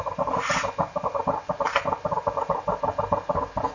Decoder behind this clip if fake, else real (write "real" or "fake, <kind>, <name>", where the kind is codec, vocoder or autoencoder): real